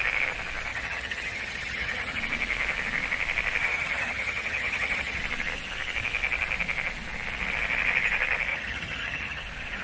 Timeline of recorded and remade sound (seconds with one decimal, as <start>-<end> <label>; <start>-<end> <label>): 0.0-0.7 recorded; 0.7-2.2 remade; 2.2-3.6 recorded; 3.6-5.2 remade; 5.2-8.5 recorded; 8.5-9.4 remade; 9.4-9.8 recorded